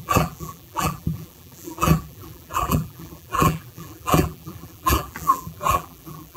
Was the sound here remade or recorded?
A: remade